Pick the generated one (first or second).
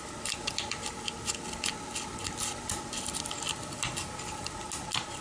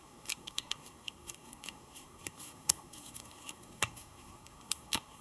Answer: second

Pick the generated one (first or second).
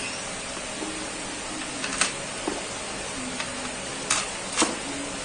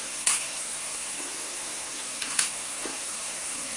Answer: second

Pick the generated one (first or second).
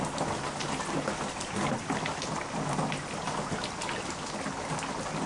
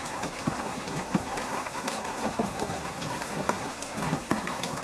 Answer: second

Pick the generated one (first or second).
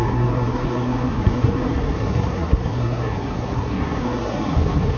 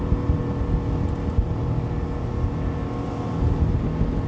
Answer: first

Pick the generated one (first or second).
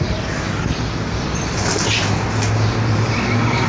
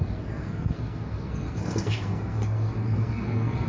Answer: second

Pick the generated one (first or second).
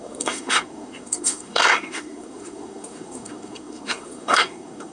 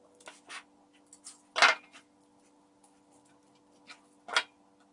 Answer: first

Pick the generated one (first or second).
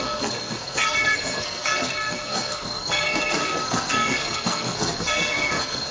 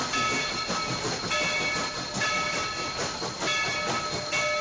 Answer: first